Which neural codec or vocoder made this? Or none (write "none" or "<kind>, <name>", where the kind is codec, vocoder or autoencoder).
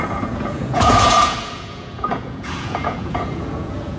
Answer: vocoder, Vocos